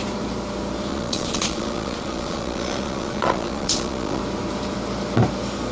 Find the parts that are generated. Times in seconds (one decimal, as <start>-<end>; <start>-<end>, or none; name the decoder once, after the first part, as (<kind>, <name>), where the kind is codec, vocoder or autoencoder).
0.9-4.2 (vocoder, Vocos)